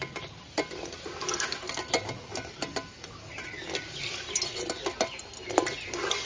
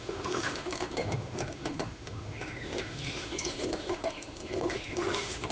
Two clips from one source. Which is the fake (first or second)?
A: second